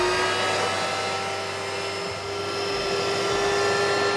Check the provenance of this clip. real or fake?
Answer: real